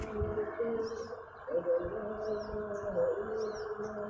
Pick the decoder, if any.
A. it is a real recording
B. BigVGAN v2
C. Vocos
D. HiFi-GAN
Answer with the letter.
A